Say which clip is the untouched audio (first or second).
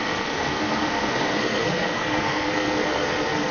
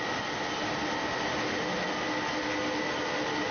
second